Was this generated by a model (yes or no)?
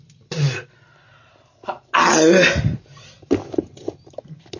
no